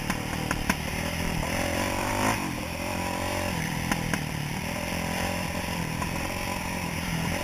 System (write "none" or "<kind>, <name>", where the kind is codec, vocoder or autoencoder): vocoder, BigVGAN v2